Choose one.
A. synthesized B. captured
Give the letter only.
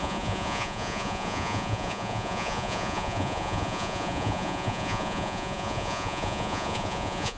A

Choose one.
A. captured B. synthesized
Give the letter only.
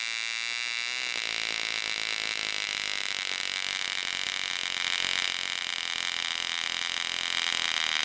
A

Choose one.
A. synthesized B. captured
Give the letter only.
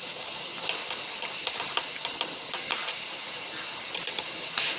B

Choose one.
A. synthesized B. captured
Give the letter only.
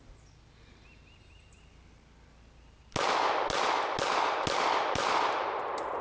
B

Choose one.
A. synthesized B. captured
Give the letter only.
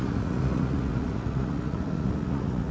A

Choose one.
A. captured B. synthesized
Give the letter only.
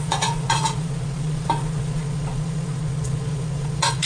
B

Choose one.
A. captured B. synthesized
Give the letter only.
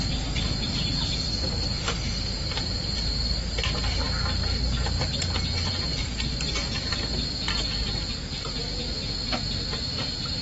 A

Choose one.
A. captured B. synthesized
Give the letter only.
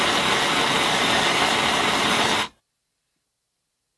A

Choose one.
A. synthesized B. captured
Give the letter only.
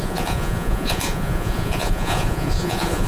A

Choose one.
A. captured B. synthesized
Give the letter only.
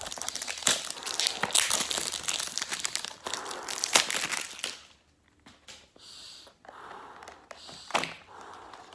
A